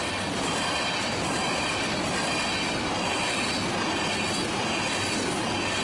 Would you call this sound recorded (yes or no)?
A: yes